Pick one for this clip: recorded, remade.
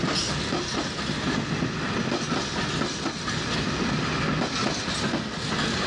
recorded